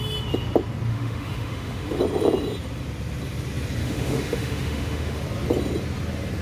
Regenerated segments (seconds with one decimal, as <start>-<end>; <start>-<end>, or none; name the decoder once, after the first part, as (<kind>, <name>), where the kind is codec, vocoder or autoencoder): 0.9-2.0 (autoencoder, DAC-VAE); 3.8-5.2